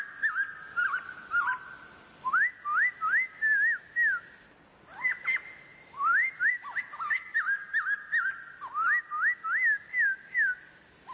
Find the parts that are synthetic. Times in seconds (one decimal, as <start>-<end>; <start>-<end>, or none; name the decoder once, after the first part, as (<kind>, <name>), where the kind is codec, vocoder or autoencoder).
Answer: 5.7-6.5 (vocoder, BigVGAN v2)